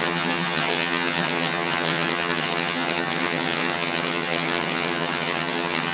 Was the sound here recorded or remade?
remade